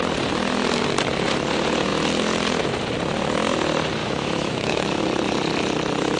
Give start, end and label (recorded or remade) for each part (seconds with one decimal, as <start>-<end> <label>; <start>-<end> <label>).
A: 0.0-4.0 recorded; 4.0-5.0 remade; 5.0-6.2 recorded